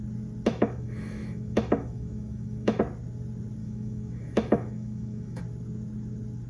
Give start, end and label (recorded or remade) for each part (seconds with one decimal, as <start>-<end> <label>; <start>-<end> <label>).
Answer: 0.0-0.5 recorded; 0.5-2.8 remade; 2.8-3.6 recorded; 3.6-5.4 remade; 5.4-6.5 recorded